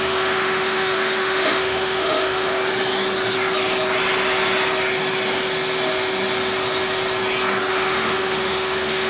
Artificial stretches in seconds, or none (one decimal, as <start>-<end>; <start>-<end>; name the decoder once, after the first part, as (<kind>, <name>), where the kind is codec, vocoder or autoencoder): 0.0-2.6 (autoencoder, DAC-VAE); 7.7-9.1